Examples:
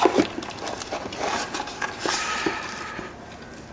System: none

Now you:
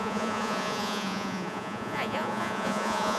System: vocoder, Vocos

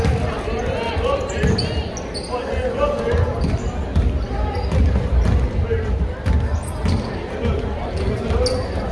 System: none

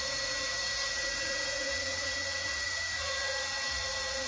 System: vocoder, Vocos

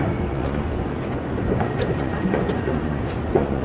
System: vocoder, Vocos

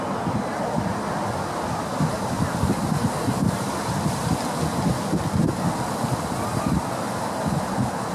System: none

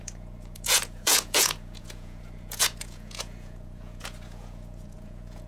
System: vocoder, Vocos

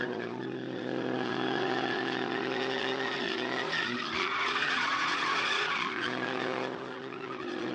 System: vocoder, Vocos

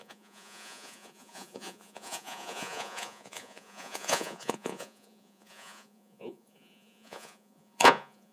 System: vocoder, Vocos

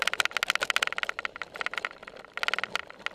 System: none